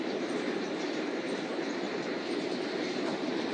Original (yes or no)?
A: no